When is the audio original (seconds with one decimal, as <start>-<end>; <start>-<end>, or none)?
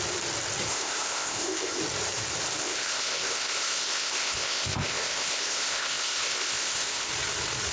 0.0-0.7; 1.8-2.6; 7.1-7.7